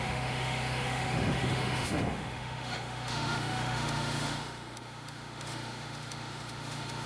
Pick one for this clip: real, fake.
fake